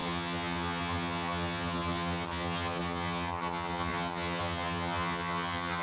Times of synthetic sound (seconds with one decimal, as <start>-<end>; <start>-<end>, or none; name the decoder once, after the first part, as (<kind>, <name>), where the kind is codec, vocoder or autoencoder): 0.0-5.8 (vocoder, HiFi-GAN)